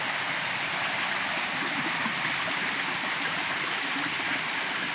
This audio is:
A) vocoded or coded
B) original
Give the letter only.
B